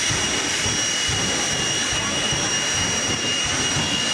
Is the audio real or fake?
real